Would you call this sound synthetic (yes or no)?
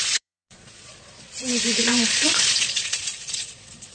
yes